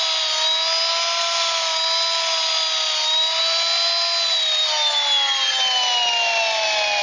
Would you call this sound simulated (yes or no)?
no